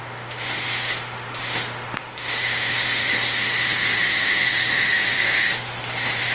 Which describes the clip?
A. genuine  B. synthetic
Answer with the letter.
B